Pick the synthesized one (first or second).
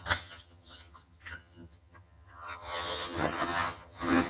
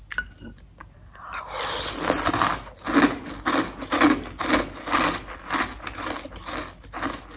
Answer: first